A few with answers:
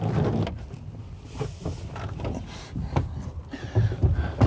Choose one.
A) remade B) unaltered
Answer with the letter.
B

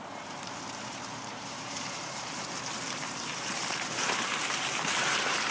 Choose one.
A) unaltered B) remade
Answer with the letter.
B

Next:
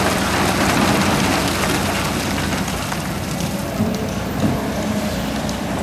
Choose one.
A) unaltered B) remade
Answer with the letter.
A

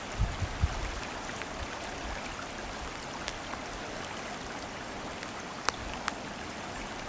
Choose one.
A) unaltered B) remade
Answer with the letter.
A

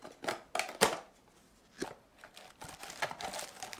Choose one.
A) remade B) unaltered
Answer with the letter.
B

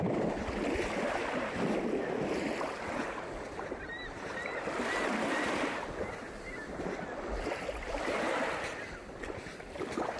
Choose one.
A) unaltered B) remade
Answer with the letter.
A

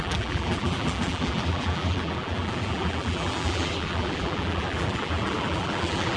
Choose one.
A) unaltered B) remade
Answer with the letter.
B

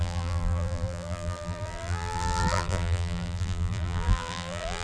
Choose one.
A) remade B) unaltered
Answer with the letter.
A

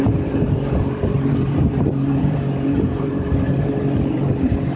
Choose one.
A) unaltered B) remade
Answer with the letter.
B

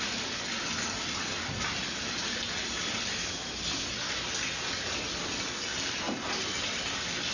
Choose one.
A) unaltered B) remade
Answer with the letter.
A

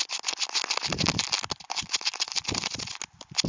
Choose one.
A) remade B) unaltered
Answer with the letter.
B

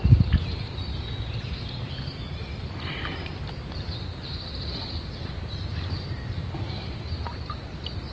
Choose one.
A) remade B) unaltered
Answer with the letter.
A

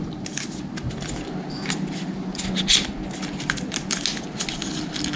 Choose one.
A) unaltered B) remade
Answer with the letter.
A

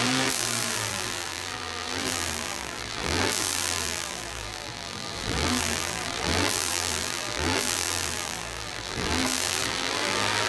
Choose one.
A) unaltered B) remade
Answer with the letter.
B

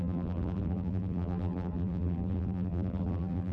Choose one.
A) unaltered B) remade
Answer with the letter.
B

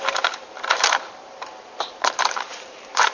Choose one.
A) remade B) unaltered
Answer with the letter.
A